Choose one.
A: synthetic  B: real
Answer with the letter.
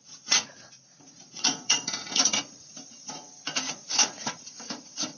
A